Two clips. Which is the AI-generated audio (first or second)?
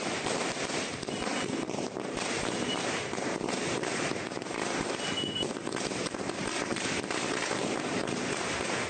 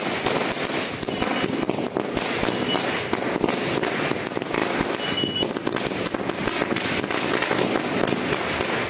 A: first